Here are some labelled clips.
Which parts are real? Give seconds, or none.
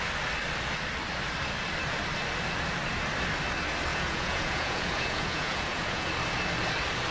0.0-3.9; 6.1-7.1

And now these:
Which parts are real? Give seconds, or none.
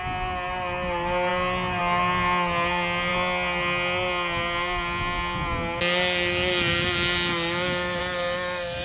0.0-8.8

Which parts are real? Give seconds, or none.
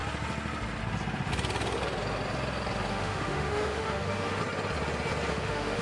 0.0-2.9; 4.4-5.3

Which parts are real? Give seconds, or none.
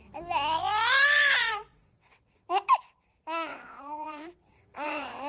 0.0-1.4; 2.5-3.5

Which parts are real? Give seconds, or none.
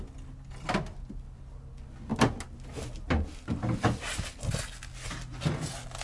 0.0-6.0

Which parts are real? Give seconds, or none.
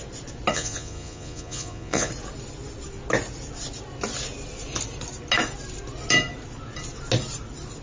0.0-0.5; 2.1-7.8